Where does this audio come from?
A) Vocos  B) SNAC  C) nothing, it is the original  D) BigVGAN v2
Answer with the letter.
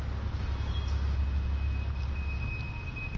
C